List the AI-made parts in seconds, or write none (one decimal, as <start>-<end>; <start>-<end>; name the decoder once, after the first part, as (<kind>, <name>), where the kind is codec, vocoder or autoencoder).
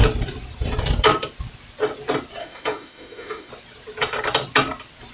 2.4-3.5 (autoencoder, DAC-VAE)